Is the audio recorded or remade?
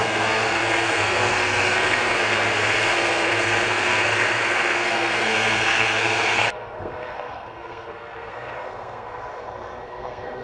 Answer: remade